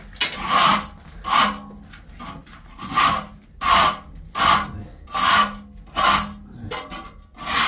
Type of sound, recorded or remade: recorded